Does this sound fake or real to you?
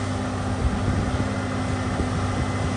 real